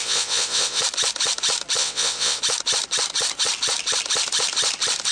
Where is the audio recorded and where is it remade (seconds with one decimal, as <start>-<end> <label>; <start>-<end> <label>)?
0.0-0.8 remade; 0.8-1.8 recorded; 1.8-2.4 remade; 2.4-5.1 recorded